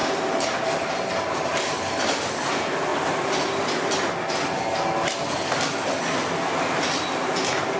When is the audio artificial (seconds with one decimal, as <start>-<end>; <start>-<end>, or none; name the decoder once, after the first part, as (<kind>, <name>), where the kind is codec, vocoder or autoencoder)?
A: 0.0-2.0 (vocoder, BigVGAN v2)